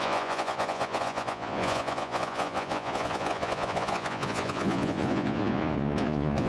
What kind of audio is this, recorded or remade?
remade